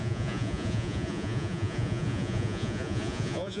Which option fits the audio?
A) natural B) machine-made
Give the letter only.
B